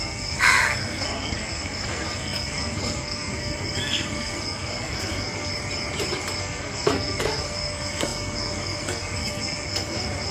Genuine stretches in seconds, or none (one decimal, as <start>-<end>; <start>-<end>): 5.5-6.4